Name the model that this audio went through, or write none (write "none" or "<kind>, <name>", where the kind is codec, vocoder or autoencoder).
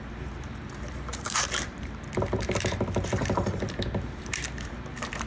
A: vocoder, BigVGAN v2